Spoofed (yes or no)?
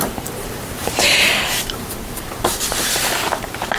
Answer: yes